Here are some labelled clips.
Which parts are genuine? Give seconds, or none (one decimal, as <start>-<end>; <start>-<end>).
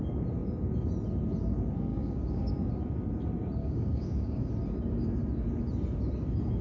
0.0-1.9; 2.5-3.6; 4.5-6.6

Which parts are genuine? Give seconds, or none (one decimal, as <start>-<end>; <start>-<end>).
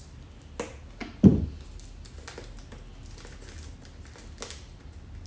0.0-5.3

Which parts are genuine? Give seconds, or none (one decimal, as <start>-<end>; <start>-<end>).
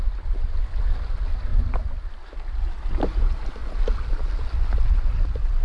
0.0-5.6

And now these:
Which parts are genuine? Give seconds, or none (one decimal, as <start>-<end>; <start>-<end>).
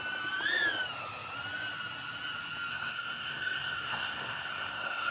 0.0-2.7